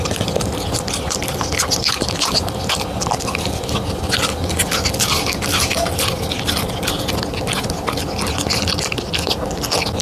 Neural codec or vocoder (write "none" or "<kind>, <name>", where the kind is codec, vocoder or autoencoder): none